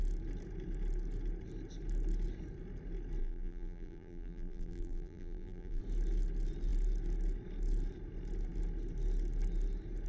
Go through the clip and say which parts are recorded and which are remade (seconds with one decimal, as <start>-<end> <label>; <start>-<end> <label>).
0.0-3.2 recorded; 3.2-5.8 remade; 5.8-10.1 recorded

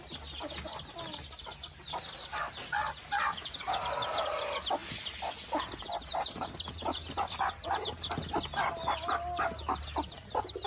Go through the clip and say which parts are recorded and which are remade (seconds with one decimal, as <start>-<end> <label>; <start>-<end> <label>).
0.0-10.7 recorded

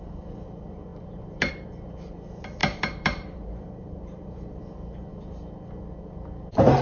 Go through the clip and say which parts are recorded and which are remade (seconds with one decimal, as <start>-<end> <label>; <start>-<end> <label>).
0.0-0.9 recorded; 0.9-1.5 remade; 1.5-2.6 recorded; 2.6-4.6 remade; 4.6-6.8 recorded

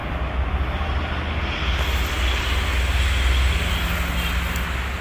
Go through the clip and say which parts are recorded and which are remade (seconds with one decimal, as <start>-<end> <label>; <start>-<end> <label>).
0.0-5.0 recorded

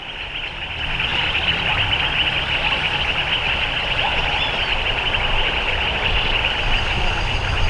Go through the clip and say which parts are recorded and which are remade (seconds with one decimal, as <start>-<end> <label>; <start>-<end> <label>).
0.0-7.7 remade